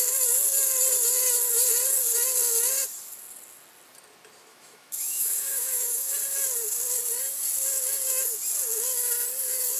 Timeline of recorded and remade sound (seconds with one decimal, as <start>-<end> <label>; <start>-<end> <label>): 0.0-4.5 recorded; 4.5-6.1 remade; 6.1-9.8 recorded